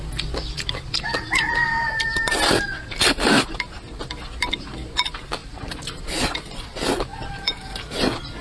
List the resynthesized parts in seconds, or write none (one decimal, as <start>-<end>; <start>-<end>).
5.4-6.0; 7.1-8.0